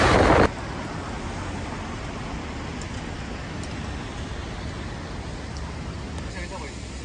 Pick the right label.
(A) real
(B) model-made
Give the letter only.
A